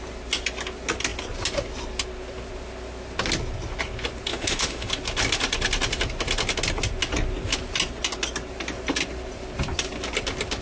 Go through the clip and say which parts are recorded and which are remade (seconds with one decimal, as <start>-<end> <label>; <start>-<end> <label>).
0.0-4.3 recorded; 4.3-4.9 remade; 4.9-10.6 recorded